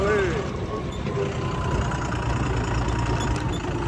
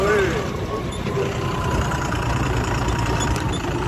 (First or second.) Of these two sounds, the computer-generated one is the second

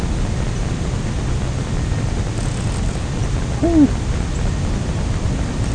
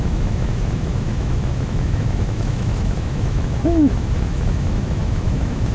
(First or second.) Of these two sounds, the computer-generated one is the second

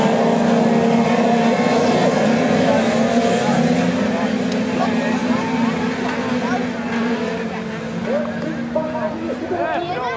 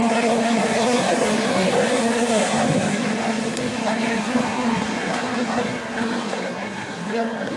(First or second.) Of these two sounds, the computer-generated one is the second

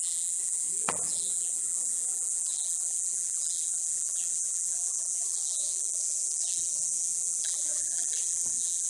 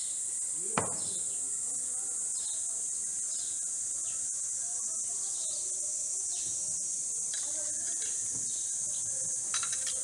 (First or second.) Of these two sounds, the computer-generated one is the first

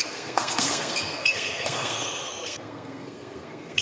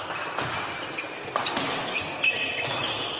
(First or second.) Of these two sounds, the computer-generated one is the first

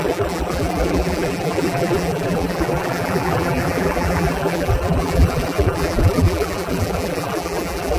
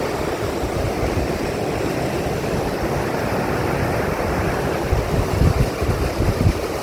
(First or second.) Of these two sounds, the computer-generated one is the first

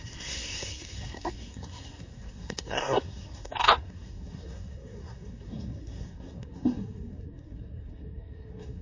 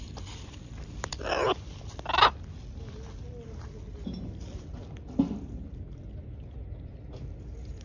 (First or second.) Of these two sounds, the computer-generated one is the first